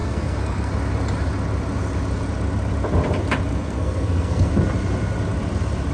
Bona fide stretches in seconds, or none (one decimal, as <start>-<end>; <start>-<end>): 0.7-3.5; 4.5-5.9